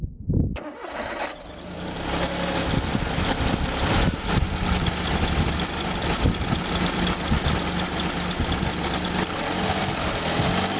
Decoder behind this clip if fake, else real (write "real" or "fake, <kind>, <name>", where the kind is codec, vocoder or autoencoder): real